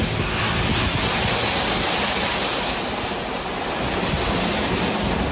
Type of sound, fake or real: real